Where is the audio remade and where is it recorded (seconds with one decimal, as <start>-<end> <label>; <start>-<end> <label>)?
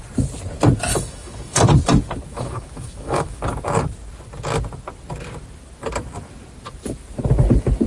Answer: 0.0-0.9 recorded; 0.9-1.6 remade; 1.6-2.3 recorded; 2.3-3.4 remade; 3.4-7.9 recorded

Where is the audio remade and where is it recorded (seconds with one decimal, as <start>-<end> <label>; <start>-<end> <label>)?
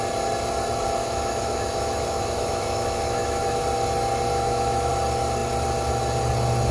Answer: 0.0-1.0 recorded; 1.0-3.6 remade; 3.6-4.3 recorded; 4.3-4.9 remade; 4.9-6.7 recorded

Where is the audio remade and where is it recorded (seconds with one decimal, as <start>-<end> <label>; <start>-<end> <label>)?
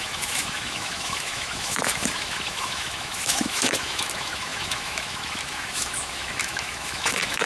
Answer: 0.0-7.5 remade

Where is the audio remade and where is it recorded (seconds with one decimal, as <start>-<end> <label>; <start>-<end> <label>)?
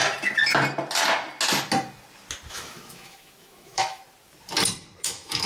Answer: 0.0-2.5 recorded; 2.5-4.0 remade; 4.0-5.0 recorded; 5.0-5.5 remade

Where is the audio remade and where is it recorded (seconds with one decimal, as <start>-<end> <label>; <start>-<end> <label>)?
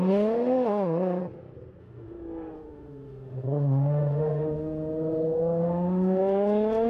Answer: 0.0-1.2 remade; 1.2-1.8 recorded; 1.8-6.9 remade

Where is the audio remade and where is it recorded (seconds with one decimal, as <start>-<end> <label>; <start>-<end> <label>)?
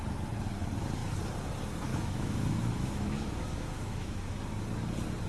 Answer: 0.0-1.9 recorded; 1.9-4.4 remade; 4.4-5.3 recorded